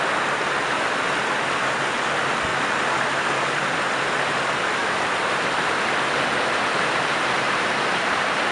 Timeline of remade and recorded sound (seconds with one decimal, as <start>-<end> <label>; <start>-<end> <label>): 0.0-4.8 recorded; 4.8-5.7 remade; 5.7-6.7 recorded; 6.7-8.5 remade